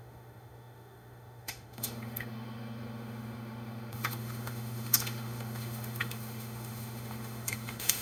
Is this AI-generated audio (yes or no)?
yes